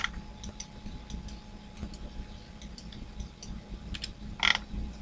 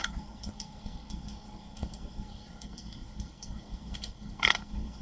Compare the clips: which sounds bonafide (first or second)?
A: first